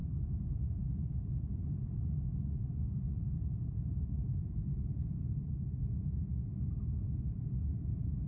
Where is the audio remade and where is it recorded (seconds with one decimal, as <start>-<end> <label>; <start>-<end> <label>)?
0.0-6.0 remade; 6.0-6.9 recorded; 6.9-8.3 remade